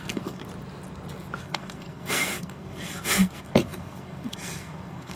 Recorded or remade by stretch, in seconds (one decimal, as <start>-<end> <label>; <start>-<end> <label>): 0.0-0.4 remade; 0.4-1.4 recorded; 1.4-5.2 remade